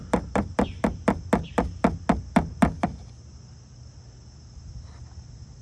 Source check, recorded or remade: recorded